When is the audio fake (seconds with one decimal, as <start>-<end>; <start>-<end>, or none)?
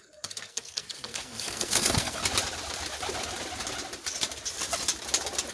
0.0-2.2